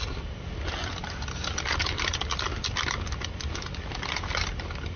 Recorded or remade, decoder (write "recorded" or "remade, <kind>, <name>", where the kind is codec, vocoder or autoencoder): recorded